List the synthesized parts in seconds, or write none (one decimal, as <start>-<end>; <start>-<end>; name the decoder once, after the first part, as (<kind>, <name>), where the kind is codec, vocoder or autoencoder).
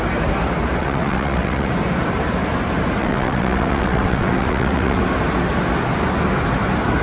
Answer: 0.8-1.7 (vocoder, WaveNeXt); 3.0-5.0